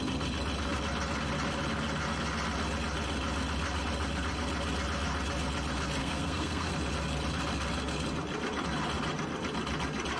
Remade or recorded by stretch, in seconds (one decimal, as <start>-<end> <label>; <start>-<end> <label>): 0.0-6.0 recorded; 6.0-6.7 remade; 6.7-10.2 recorded